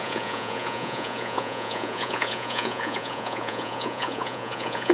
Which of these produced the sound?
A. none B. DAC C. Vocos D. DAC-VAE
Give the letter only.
C